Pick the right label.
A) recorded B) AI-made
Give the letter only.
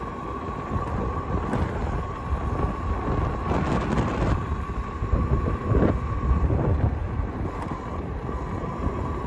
A